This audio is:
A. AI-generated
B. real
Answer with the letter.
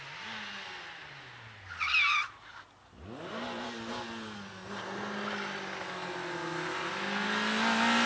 B